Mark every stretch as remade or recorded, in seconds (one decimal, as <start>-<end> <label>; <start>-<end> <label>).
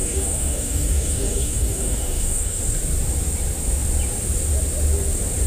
0.0-2.6 remade; 2.6-5.5 recorded